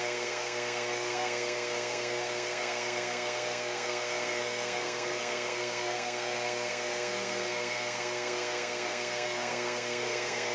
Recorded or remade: remade